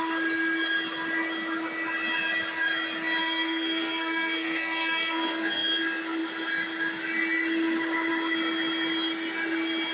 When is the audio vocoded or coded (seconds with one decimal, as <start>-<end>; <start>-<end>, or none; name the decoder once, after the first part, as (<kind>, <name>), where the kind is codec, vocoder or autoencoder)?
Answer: 3.2-5.8 (codec, SNAC)